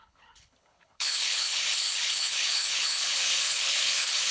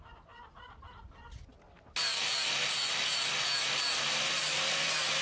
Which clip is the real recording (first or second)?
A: second